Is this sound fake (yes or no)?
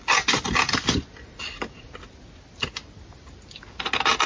no